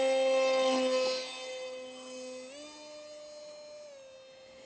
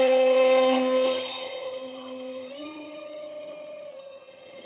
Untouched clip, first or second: first